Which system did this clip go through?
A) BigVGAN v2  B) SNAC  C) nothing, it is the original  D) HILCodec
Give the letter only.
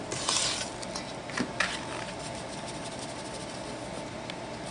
C